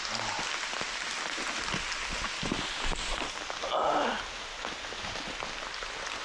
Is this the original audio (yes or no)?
yes